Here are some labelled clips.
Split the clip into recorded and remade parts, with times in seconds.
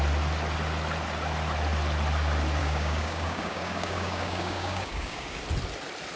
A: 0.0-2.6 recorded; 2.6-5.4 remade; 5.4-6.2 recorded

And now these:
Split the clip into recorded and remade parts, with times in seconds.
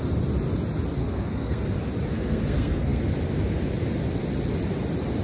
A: 0.0-1.0 recorded; 1.0-1.6 remade; 1.6-2.1 recorded; 2.1-3.0 remade; 3.0-5.2 recorded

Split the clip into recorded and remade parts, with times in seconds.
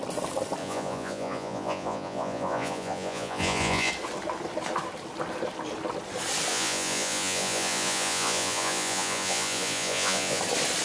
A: 0.0-0.6 recorded; 0.6-3.9 remade; 3.9-6.5 recorded; 6.5-10.4 remade; 10.4-10.8 recorded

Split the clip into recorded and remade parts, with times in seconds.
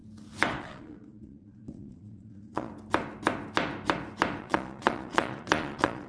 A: 0.0-0.6 recorded; 0.6-2.7 remade; 2.7-4.4 recorded; 4.4-6.1 remade